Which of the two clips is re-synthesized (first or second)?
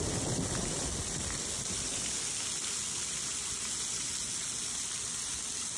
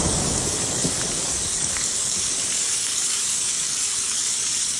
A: second